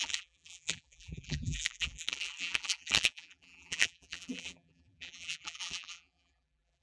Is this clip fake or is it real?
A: fake